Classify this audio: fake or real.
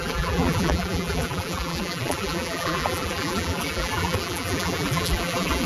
fake